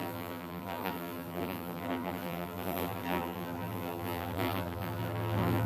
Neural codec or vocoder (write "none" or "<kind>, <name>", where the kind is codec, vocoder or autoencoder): vocoder, BigVGAN v2